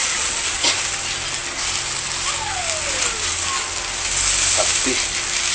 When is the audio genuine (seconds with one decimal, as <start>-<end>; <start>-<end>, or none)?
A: 0.7-5.5